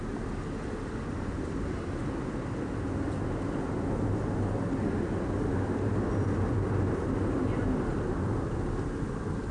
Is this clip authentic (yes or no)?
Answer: yes